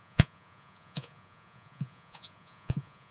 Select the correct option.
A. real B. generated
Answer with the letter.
B